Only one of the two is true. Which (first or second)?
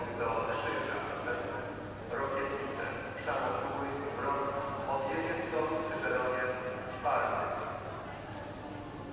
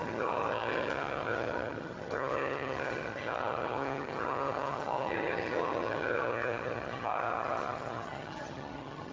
first